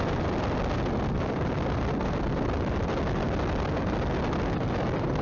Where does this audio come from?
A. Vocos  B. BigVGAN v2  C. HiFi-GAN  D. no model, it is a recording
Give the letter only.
B